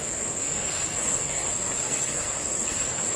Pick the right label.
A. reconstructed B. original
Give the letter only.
A